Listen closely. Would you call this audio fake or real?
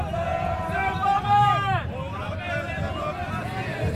fake